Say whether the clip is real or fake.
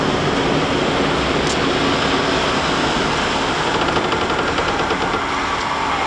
real